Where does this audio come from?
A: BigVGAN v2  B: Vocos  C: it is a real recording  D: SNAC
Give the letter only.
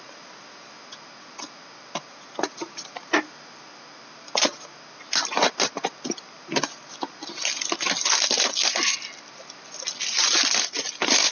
C